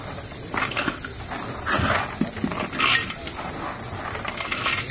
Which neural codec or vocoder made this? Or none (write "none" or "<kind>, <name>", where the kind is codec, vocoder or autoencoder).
none